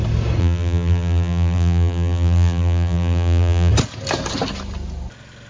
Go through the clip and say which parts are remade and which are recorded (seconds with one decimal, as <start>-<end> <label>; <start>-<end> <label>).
0.0-0.4 recorded; 0.4-3.7 remade; 3.7-5.5 recorded